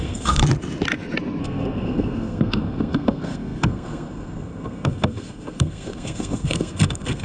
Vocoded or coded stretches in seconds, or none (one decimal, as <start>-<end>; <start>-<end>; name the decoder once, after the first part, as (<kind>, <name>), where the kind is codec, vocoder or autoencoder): 0.0-0.4 (codec, SNAC); 1.4-7.2